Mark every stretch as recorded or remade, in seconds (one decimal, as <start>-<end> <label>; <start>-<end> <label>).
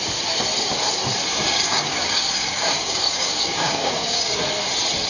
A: 0.0-1.3 recorded; 1.3-4.4 remade; 4.4-5.1 recorded